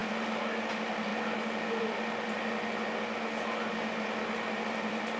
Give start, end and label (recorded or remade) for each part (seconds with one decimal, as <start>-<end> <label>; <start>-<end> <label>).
0.0-5.2 recorded